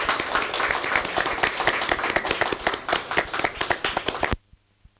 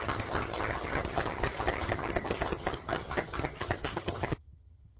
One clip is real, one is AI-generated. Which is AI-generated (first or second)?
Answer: second